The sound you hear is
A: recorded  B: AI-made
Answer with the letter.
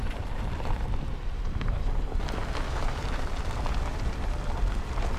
B